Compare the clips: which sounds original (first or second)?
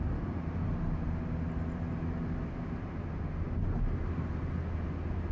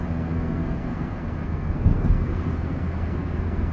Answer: first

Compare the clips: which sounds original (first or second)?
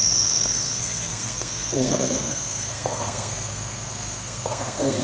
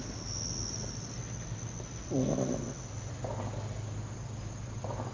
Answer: second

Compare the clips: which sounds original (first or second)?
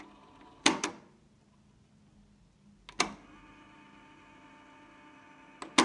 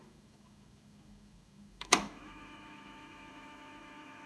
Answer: first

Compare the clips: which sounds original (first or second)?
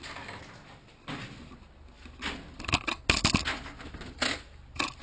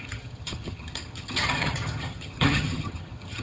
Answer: first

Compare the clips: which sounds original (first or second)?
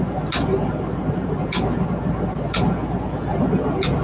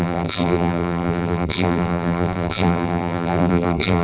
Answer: first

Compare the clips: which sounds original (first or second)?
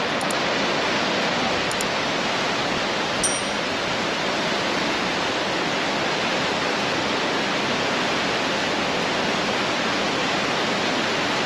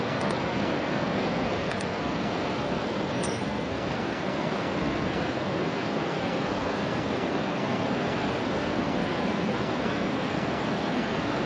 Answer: first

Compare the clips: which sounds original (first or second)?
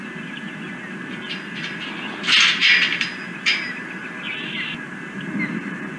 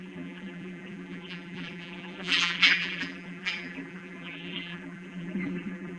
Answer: first